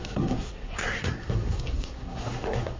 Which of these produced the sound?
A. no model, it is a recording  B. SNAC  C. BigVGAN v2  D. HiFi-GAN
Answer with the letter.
B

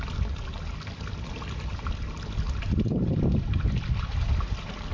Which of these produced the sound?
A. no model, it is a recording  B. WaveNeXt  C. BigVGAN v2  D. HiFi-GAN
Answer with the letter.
A